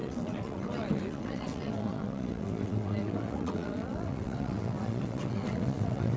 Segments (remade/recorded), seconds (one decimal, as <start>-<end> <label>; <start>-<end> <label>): 0.0-6.2 remade